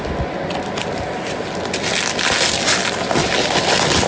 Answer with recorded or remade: recorded